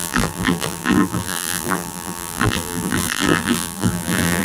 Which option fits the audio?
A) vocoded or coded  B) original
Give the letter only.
A